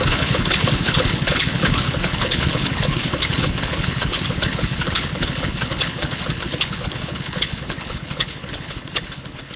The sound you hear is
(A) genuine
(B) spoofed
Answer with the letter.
B